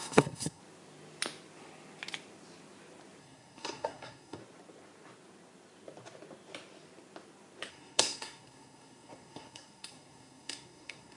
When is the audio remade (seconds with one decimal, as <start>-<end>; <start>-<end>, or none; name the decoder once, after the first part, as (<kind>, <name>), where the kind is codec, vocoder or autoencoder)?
0.0-0.6 (codec, SNAC); 3.2-4.4; 7.7-11.2